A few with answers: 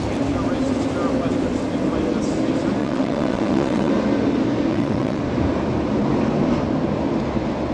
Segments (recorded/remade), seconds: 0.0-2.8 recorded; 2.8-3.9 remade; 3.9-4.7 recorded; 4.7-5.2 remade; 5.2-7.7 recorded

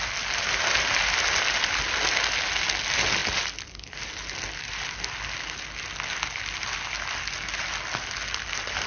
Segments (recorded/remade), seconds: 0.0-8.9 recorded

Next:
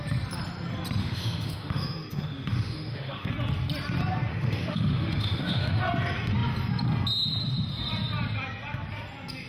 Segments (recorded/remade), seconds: 0.0-1.0 recorded; 1.0-3.3 remade; 3.3-4.3 recorded; 4.3-5.8 remade; 5.8-9.5 recorded

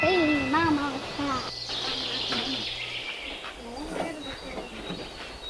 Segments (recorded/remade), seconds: 0.0-5.5 recorded

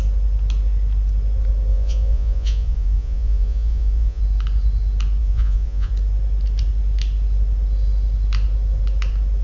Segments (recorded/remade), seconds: 0.0-1.7 recorded; 1.7-4.2 remade; 4.2-5.2 recorded; 5.2-5.9 remade; 5.9-9.4 recorded

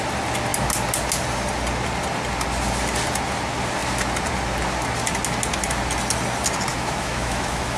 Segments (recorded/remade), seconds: 0.0-6.7 recorded; 6.7-7.8 remade

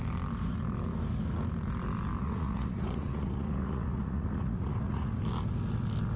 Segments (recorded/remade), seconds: 0.0-2.2 recorded; 2.2-5.2 remade; 5.2-6.2 recorded

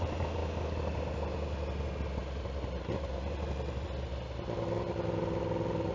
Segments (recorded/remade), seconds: 0.0-5.9 recorded